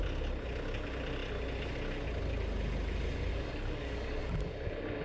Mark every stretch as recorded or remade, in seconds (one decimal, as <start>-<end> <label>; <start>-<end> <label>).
0.0-3.3 recorded; 3.3-4.2 remade; 4.2-5.0 recorded